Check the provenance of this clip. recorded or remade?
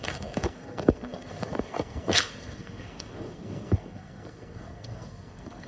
remade